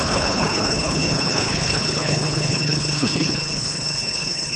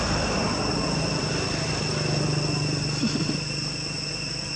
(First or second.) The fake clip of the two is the first